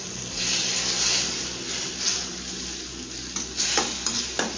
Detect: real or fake real